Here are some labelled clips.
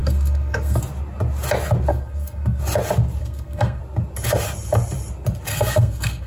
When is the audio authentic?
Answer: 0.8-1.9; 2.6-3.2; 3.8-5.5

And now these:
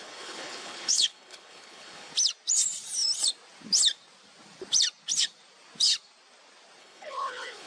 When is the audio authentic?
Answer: 2.1-6.8

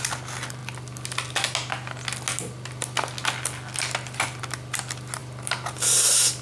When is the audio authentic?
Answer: 0.0-6.4

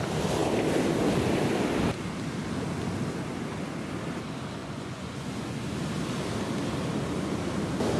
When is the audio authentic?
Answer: 0.0-4.6; 5.8-8.0

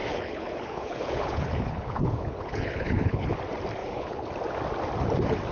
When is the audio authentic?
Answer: 3.3-3.8; 4.3-5.5

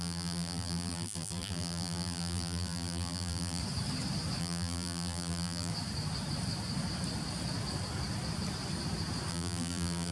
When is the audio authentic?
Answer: 3.6-4.4; 5.7-9.3

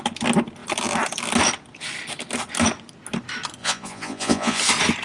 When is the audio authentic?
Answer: 0.0-3.6; 4.6-5.0

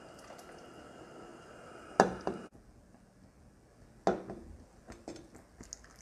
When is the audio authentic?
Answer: 0.0-6.0